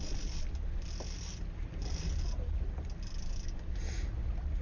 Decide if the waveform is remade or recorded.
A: recorded